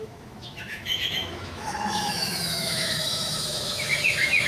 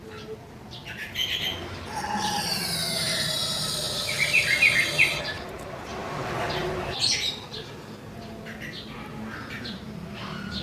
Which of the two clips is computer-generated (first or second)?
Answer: first